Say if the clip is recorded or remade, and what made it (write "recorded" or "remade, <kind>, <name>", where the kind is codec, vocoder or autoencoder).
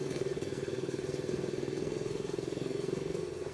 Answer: remade, codec, SNAC